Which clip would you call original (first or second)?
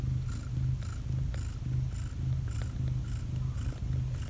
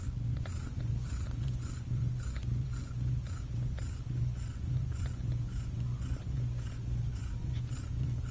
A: first